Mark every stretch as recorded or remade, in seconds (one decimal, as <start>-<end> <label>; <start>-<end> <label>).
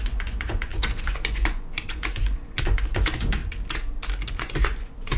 0.0-3.4 remade; 3.4-4.3 recorded; 4.3-5.2 remade